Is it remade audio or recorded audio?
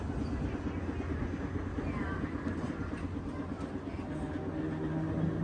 recorded